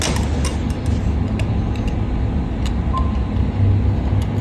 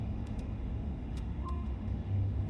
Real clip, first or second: first